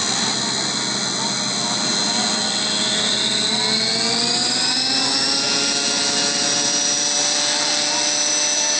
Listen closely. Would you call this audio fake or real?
real